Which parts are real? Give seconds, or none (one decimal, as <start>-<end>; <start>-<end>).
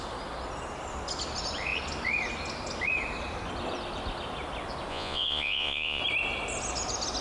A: 0.0-4.9; 6.0-7.2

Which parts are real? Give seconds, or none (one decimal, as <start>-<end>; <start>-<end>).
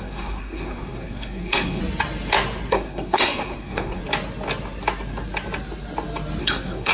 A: 1.8-2.7; 4.0-6.4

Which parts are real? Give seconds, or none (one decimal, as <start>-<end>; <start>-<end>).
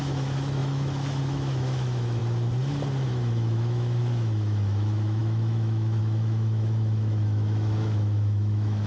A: 2.2-3.1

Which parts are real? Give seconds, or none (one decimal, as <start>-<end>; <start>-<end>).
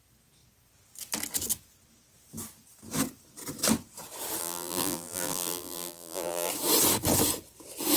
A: 0.0-4.4; 6.5-8.0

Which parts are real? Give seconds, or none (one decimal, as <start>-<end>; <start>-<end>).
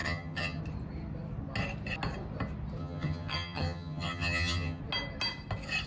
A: 0.6-2.8; 4.8-5.9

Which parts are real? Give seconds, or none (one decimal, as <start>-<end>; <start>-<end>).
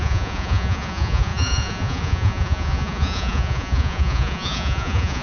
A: none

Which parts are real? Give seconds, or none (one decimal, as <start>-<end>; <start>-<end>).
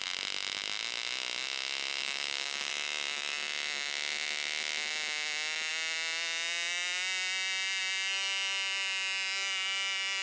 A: 0.0-2.0; 2.7-10.2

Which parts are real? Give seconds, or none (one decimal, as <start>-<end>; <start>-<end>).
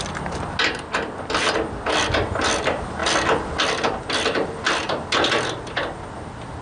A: 0.0-6.6